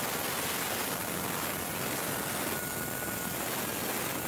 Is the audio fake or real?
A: real